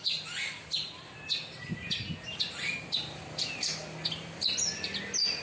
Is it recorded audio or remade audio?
recorded